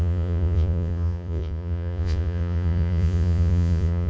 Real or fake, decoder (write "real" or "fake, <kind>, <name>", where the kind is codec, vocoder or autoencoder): fake, vocoder, Vocos